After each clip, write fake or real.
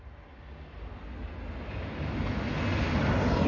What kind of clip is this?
real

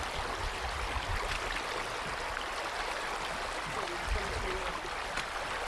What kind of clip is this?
real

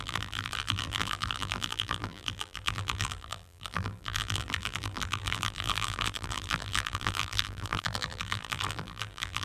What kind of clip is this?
fake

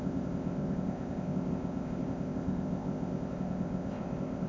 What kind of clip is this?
fake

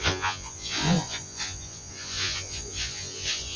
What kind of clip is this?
fake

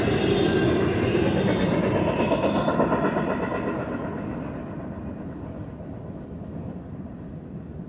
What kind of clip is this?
real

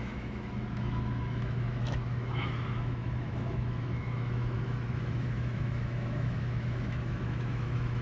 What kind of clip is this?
fake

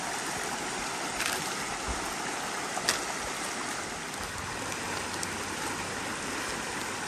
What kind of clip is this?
real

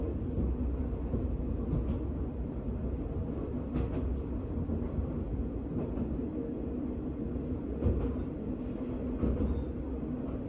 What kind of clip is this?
real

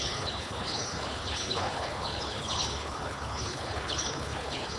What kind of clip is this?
fake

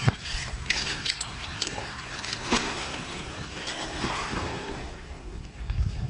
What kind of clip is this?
fake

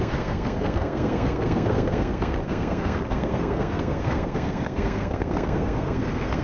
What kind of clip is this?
fake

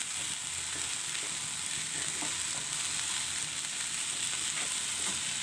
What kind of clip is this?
real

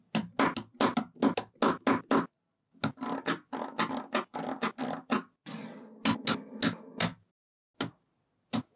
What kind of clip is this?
real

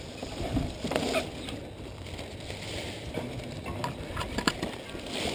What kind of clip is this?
real